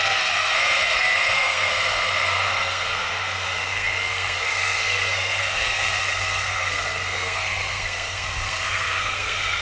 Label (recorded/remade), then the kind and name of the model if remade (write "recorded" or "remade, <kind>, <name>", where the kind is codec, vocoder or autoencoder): remade, codec, SNAC